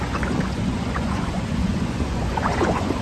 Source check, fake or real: fake